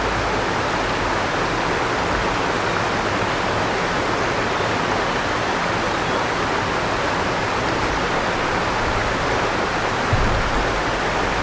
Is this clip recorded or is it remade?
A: recorded